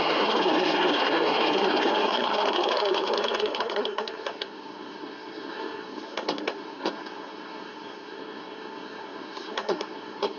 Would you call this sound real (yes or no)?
no